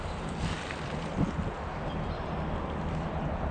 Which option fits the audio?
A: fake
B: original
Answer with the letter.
B